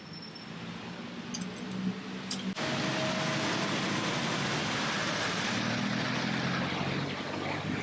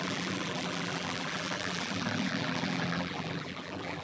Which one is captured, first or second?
first